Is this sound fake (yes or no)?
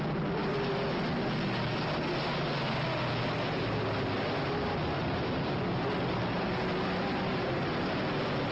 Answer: no